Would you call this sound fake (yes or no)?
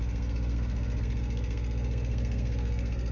yes